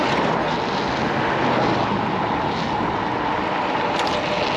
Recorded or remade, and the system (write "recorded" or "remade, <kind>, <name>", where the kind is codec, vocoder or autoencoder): recorded